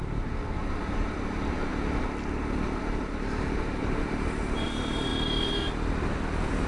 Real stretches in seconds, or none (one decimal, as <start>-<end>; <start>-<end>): 1.7-2.8; 5.1-6.7

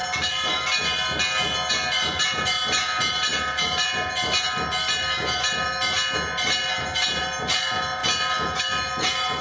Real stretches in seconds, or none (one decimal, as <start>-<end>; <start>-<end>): 0.0-9.4

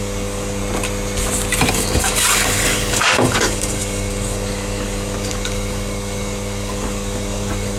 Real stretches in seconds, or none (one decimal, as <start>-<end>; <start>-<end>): 0.6-1.7

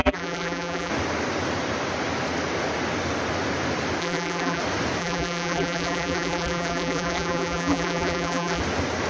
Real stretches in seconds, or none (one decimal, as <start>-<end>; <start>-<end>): 0.9-4.0; 4.6-5.0; 8.6-9.1

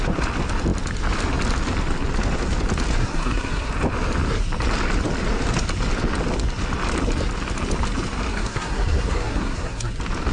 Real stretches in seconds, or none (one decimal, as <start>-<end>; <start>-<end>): 0.0-3.0; 3.7-8.3; 9.9-10.3

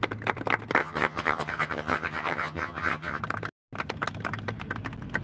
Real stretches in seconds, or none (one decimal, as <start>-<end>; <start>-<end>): 0.0-0.8; 3.2-5.2

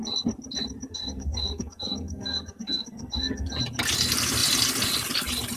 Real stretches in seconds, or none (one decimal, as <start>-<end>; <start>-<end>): 0.0-0.9; 3.5-5.6